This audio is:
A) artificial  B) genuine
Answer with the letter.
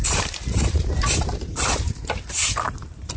A